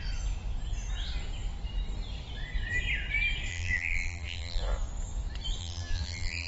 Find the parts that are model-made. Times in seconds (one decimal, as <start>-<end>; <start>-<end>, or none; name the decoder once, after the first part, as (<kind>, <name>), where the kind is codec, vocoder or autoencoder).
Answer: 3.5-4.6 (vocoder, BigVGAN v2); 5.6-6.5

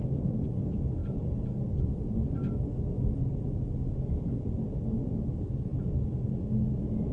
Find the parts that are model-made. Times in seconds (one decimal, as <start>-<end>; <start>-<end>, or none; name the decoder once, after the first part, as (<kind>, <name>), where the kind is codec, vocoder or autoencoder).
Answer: none

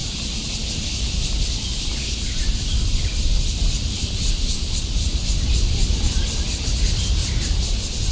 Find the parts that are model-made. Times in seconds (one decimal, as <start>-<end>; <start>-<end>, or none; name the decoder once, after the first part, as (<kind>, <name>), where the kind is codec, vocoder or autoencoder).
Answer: 0.7-8.1 (vocoder, BigVGAN v2)

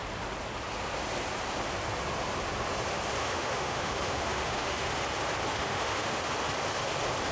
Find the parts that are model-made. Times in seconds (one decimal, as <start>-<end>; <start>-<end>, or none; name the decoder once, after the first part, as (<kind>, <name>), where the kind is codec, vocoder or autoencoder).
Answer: 3.2-4.9 (autoencoder, DAC-VAE); 5.5-6.3

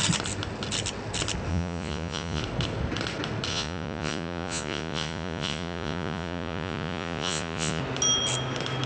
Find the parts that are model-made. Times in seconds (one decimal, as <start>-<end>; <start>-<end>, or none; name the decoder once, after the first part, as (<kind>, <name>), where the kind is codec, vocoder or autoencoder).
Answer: 1.5-2.4 (vocoder, Vocos); 3.5-7.8